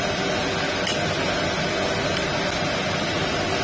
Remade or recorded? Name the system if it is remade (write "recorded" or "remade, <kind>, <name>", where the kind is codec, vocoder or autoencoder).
recorded